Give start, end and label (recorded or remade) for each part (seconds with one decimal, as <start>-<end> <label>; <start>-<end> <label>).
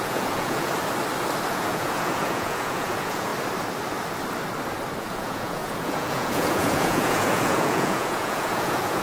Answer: 0.0-0.7 remade; 0.7-1.5 recorded; 1.5-3.3 remade; 3.3-5.0 recorded; 5.0-9.0 remade